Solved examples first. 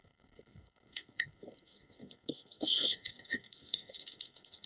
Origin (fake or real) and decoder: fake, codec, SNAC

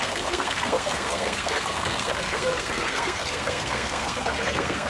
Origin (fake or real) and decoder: fake, codec, SNAC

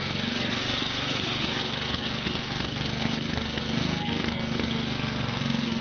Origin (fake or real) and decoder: fake, codec, SNAC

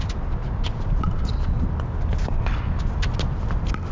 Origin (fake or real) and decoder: real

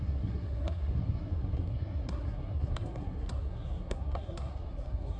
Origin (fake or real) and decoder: fake, codec, SNAC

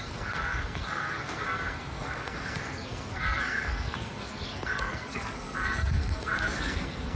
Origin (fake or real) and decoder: fake, codec, SNAC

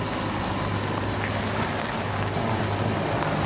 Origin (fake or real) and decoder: real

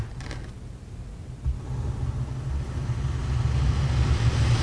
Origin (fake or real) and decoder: real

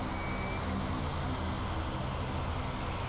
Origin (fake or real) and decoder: real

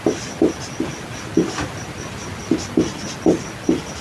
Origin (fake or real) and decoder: real